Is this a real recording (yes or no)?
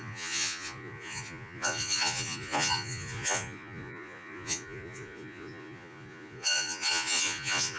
no